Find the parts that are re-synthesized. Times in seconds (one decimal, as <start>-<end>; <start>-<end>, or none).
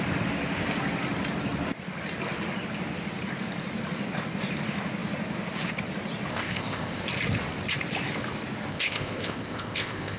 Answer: 6.3-7.0; 8.7-10.2